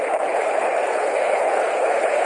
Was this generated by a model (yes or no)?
yes